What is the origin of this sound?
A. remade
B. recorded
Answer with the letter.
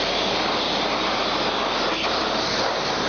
B